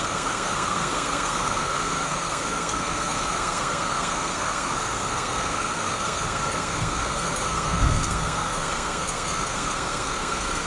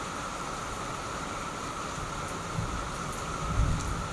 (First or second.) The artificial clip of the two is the first